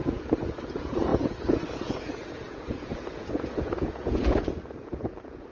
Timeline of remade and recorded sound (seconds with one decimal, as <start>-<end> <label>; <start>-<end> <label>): 0.0-5.5 remade